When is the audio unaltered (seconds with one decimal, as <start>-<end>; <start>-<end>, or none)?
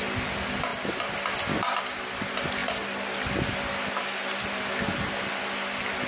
0.0-6.1